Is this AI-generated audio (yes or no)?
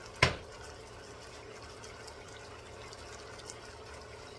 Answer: no